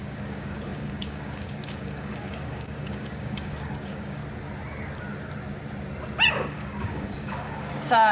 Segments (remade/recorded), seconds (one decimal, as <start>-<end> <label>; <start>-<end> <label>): 0.0-4.2 remade; 4.2-6.3 recorded; 6.3-8.1 remade